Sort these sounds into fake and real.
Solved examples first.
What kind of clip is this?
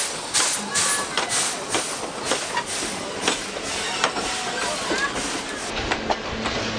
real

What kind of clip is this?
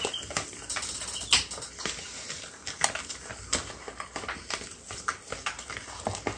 real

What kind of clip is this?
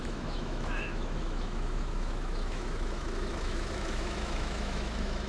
fake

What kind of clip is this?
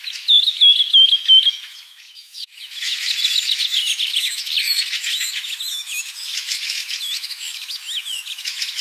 fake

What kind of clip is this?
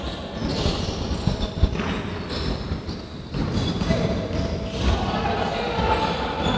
real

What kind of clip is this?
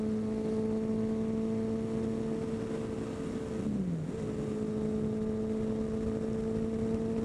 real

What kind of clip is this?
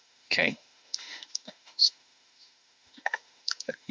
fake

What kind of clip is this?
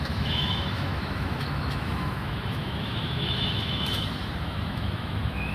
fake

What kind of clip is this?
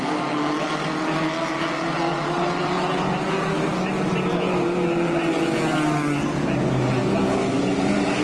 real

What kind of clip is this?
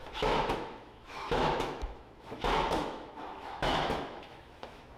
fake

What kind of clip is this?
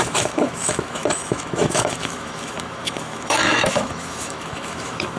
fake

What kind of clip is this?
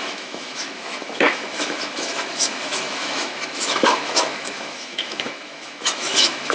fake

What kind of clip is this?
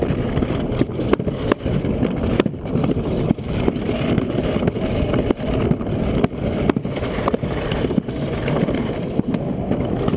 real